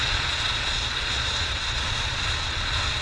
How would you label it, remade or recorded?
remade